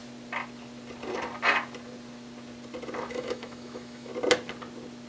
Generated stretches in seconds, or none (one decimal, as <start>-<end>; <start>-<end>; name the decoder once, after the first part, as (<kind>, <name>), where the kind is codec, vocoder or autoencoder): 3.1-4.1 (autoencoder, DAC-VAE)